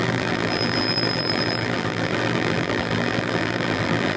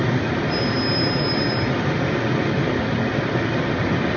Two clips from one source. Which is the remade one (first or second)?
first